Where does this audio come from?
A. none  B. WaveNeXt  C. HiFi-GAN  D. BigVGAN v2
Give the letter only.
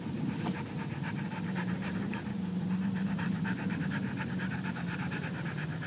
D